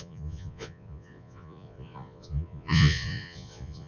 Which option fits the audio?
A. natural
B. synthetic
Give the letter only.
B